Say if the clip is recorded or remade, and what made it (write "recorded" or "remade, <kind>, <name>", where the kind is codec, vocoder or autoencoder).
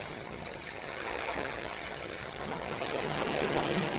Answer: remade, vocoder, HiFi-GAN